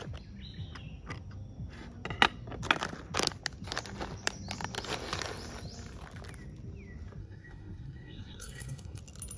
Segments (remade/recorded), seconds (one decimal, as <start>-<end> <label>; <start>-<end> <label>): 0.0-7.2 recorded; 7.2-9.0 remade; 9.0-9.4 recorded

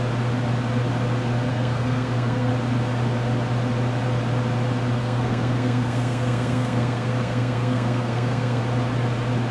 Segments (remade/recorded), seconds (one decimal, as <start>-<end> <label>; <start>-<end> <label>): 0.0-1.5 recorded; 1.5-2.5 remade; 2.5-5.0 recorded; 5.0-8.6 remade; 8.6-9.5 recorded